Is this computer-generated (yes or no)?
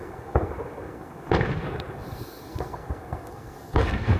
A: yes